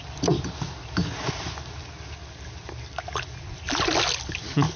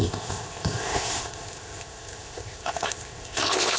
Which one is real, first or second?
first